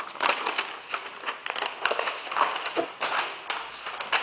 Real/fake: real